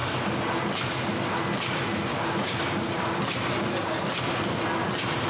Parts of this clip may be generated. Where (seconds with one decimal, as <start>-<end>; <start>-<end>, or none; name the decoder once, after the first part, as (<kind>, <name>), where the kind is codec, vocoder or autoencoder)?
2.1-2.6 (codec, DAC)